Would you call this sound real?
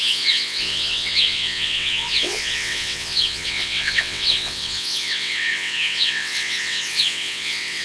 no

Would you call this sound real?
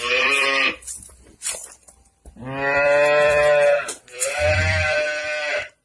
no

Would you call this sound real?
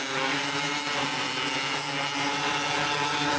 yes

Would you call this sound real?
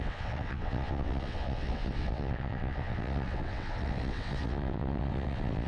no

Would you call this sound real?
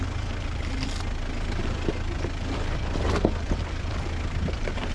yes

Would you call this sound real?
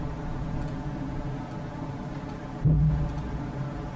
yes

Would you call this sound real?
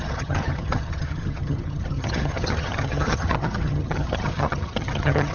no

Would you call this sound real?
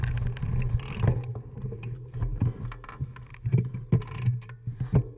yes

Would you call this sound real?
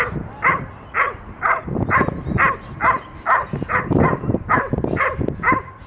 yes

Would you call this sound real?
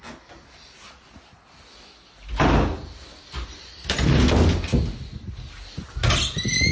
yes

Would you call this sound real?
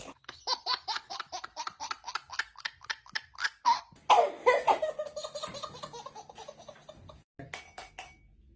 yes